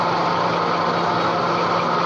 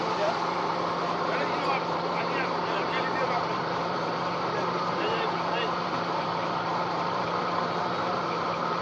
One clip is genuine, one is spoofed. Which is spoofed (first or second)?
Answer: second